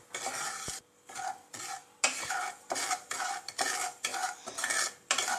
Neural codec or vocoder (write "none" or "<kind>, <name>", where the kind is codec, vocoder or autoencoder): none